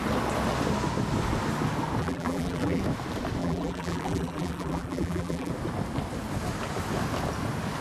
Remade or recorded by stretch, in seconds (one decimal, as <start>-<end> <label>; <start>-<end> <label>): 0.0-2.0 recorded; 2.0-2.8 remade; 2.8-3.4 recorded; 3.4-5.5 remade; 5.5-7.8 recorded